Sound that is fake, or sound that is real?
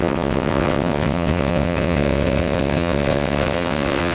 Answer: fake